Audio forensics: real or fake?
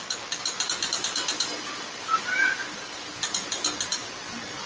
real